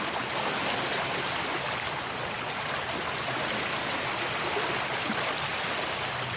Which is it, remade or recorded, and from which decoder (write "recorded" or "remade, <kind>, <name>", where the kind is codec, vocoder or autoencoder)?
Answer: recorded